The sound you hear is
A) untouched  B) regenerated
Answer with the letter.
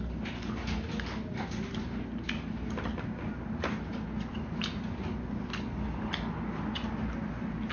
A